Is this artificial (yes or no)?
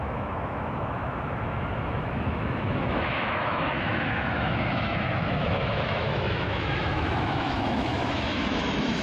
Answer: yes